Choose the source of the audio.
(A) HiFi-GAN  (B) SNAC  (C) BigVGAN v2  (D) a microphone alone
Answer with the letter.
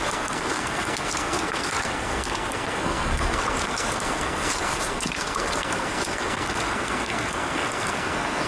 B